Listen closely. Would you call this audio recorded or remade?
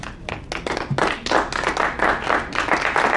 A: recorded